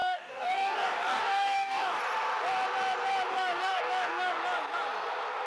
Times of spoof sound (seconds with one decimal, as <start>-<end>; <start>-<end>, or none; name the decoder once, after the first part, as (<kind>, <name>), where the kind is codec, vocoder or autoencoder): 0.0-2.0 (codec, DAC); 3.3-4.4